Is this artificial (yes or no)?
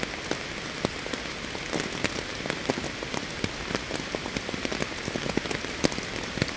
no